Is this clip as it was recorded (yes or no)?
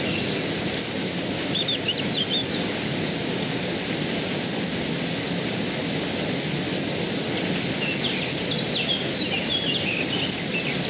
yes